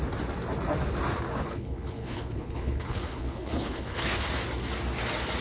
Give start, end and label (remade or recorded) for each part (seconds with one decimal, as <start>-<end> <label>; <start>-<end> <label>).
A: 0.0-1.3 recorded; 1.3-4.3 remade; 4.3-5.4 recorded